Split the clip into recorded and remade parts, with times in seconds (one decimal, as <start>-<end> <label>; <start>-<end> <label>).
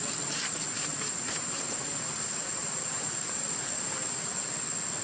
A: 0.0-0.9 recorded; 0.9-2.5 remade; 2.5-5.0 recorded